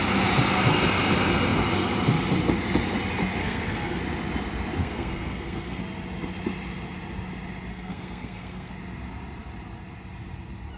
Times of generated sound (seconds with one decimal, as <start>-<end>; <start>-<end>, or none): 3.4-4.0; 4.8-5.8; 7.7-8.7